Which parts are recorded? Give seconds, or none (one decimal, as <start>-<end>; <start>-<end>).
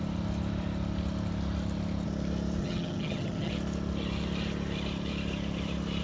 0.0-2.6; 3.5-6.0